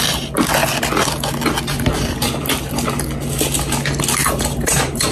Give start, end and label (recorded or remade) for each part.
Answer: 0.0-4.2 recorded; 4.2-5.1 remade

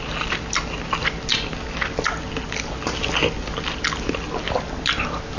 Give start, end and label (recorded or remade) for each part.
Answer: 0.0-5.4 recorded

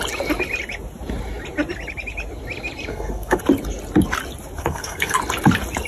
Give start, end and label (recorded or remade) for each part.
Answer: 0.0-2.9 recorded; 2.9-3.4 remade; 3.4-4.6 recorded; 4.6-5.2 remade; 5.2-5.9 recorded

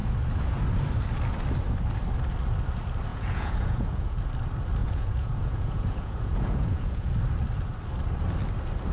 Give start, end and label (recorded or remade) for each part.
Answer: 0.0-3.1 recorded; 3.1-4.2 remade; 4.2-4.8 recorded; 4.8-7.1 remade; 7.1-8.9 recorded

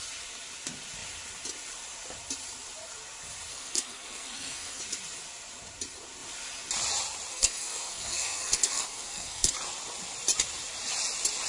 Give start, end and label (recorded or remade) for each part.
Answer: 0.0-3.5 recorded; 3.5-4.8 remade; 4.8-7.3 recorded; 7.3-9.5 remade; 9.5-11.5 recorded

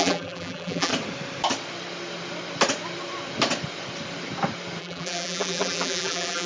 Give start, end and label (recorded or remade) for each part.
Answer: 0.0-0.9 remade; 0.9-4.8 recorded; 4.8-6.5 remade

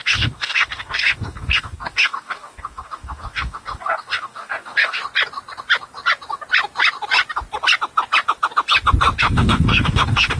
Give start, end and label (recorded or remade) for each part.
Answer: 0.0-5.0 remade; 5.0-9.2 recorded; 9.2-10.4 remade

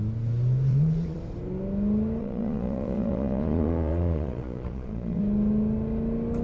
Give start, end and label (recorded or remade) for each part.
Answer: 0.0-0.7 recorded; 0.7-1.2 remade; 1.2-2.2 recorded; 2.2-5.2 remade; 5.2-6.4 recorded